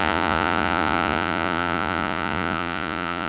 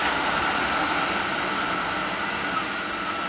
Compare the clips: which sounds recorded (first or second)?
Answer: second